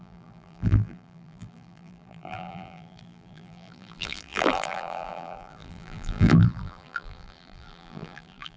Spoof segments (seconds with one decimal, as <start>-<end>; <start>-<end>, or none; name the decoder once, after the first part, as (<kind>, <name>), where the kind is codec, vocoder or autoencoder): 0.0-8.6 (vocoder, BigVGAN v2)